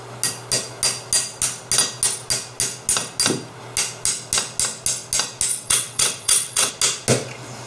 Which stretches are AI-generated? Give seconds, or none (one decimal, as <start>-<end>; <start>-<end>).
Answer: 5.5-6.7